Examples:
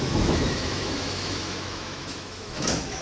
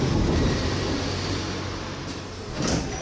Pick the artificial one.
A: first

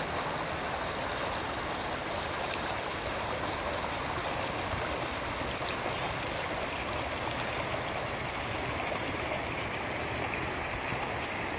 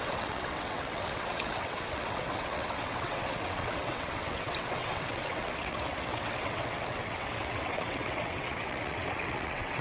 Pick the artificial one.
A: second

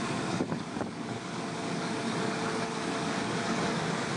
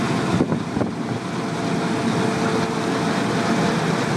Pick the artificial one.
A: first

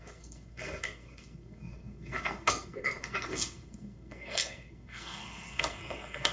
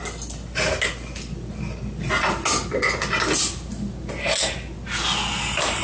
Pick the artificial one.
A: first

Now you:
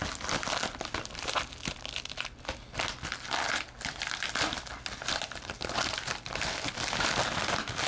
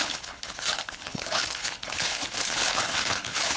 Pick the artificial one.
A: second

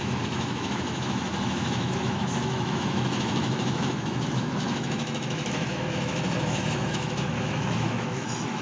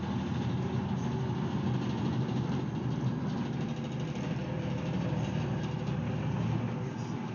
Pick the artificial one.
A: first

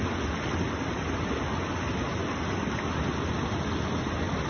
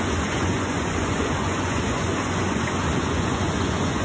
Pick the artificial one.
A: second